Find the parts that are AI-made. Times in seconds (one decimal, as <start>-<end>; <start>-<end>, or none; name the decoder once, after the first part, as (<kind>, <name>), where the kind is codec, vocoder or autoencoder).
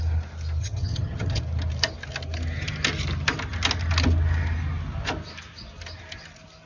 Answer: 0.6-1.4 (vocoder, HiFi-GAN)